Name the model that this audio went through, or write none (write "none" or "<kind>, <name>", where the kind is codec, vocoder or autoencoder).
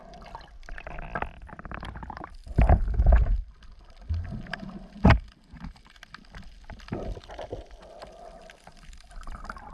none